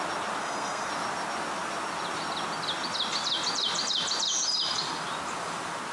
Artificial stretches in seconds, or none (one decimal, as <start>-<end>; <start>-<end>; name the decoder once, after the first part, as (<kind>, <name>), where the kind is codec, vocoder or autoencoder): 0.4-0.9 (codec, SNAC)